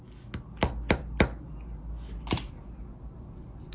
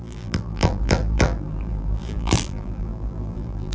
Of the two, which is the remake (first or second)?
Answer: second